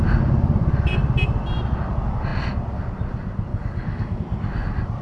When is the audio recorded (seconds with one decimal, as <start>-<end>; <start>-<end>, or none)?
0.0-3.5; 4.2-5.0